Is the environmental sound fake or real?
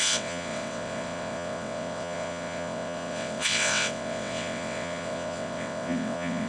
fake